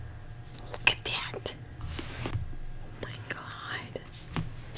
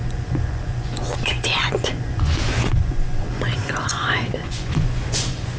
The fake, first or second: second